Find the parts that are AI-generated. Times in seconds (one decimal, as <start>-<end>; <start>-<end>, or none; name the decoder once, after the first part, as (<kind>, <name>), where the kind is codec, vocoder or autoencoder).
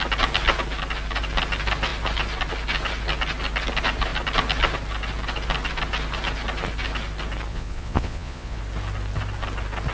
7.5-8.6 (vocoder, Vocos)